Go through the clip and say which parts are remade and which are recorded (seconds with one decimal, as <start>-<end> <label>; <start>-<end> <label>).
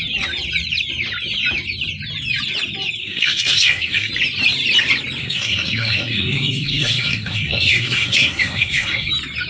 0.0-3.0 recorded; 3.0-4.1 remade; 4.1-5.2 recorded; 5.2-9.1 remade; 9.1-9.5 recorded